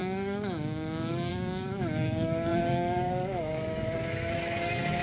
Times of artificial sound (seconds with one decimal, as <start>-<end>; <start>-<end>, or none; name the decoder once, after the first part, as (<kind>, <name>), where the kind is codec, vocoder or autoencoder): 0.0-5.0 (codec, DAC)

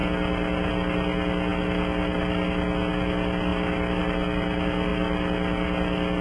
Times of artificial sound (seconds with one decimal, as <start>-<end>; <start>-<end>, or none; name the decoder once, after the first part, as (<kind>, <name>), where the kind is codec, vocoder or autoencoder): none